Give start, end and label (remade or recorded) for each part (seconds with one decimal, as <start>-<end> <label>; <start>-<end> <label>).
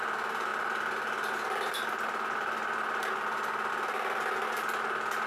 0.0-5.3 recorded